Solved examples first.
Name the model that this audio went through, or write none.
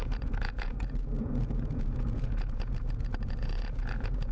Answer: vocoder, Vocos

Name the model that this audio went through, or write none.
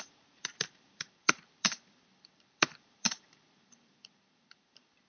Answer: vocoder, BigVGAN v2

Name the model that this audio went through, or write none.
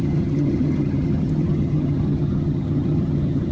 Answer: vocoder, HiFi-GAN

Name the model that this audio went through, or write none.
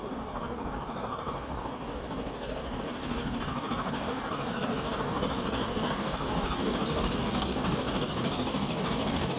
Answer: codec, DAC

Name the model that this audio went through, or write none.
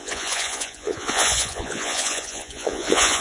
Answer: vocoder, Vocos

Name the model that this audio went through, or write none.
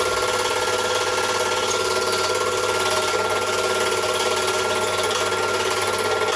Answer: none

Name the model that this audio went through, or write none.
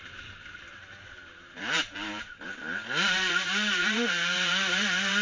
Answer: vocoder, BigVGAN v2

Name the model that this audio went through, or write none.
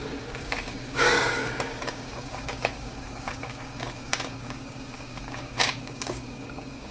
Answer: codec, DAC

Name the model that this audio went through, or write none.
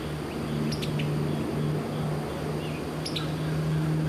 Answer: none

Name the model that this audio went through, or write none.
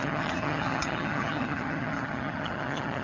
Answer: vocoder, HiFi-GAN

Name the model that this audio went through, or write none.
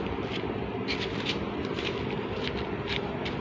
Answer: none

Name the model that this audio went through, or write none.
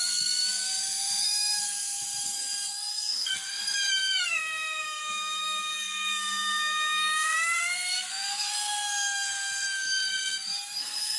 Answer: codec, SNAC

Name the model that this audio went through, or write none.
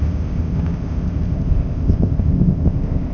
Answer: codec, ZipCodec